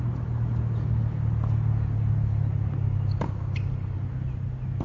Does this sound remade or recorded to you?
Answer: recorded